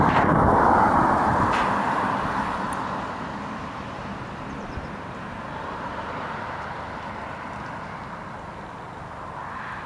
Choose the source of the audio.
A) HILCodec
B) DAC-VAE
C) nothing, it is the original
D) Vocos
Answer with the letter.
C